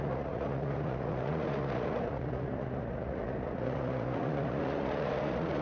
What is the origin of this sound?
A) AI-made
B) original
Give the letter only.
A